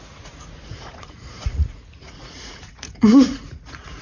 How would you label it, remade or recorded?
remade